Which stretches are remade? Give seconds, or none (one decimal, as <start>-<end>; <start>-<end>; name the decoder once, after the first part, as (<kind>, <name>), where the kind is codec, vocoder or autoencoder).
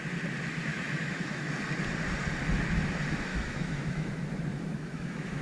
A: 0.7-1.5 (autoencoder, DAC-VAE); 3.3-4.1; 4.5-5.4